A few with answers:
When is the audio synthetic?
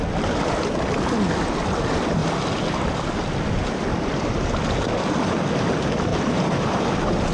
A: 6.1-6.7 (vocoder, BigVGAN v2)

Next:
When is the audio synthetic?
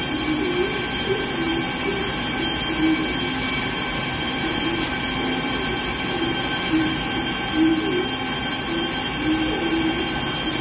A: none